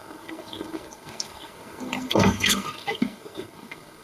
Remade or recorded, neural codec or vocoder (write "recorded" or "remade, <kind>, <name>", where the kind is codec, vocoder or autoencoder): remade, codec, SNAC